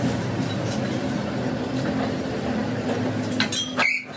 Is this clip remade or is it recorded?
recorded